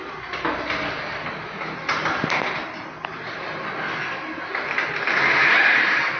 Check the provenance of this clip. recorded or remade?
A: recorded